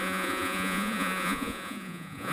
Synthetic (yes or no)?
yes